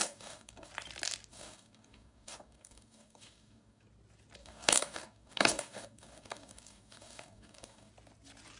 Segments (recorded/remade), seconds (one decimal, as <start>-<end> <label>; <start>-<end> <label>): 0.0-0.7 remade; 0.7-1.3 recorded; 1.3-3.8 remade; 3.8-4.4 recorded; 4.4-7.9 remade; 7.9-8.6 recorded